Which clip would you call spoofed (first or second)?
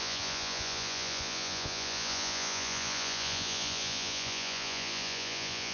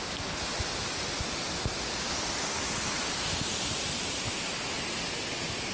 first